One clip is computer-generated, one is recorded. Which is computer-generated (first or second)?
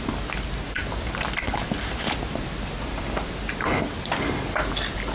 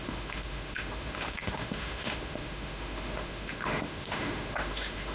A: second